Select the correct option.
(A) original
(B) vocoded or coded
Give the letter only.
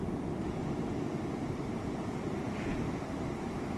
A